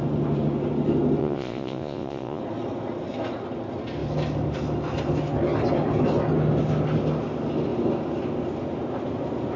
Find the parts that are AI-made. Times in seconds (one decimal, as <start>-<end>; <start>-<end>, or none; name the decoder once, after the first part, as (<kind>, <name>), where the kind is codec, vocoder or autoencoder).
1.2-2.4 (vocoder, Vocos)